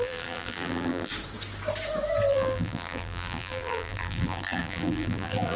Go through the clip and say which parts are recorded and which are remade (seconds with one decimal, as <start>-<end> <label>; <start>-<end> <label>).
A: 0.0-1.1 remade; 1.1-2.3 recorded; 2.3-5.6 remade